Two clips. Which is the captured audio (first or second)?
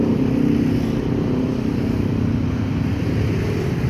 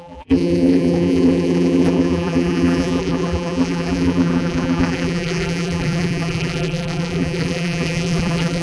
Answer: first